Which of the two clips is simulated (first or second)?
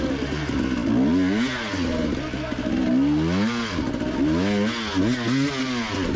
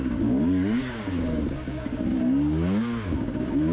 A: second